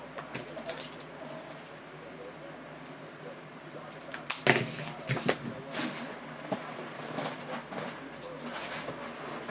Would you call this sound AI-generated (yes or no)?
no